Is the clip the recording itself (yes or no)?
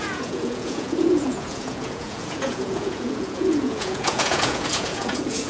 no